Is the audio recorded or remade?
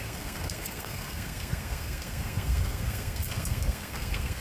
remade